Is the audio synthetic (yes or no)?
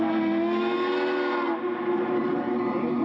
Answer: no